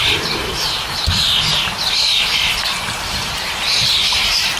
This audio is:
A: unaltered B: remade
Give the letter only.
A